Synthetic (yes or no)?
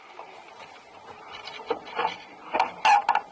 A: no